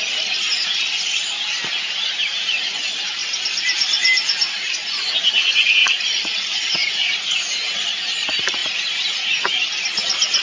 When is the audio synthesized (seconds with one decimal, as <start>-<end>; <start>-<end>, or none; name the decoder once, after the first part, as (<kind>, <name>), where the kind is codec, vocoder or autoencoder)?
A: none